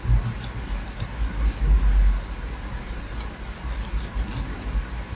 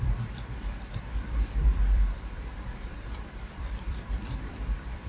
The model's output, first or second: second